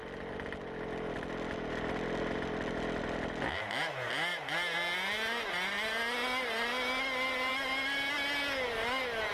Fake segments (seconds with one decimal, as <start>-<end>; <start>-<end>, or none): none